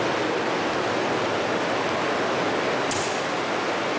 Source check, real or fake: real